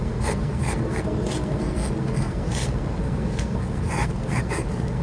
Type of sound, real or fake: fake